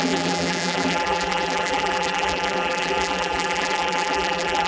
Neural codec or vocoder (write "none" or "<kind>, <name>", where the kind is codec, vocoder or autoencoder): vocoder, BigVGAN v2